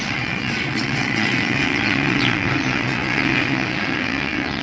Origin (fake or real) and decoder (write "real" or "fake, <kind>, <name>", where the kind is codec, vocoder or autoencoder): fake, vocoder, WaveNeXt